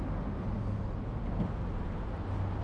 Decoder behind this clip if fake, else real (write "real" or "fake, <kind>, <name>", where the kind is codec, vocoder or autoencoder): real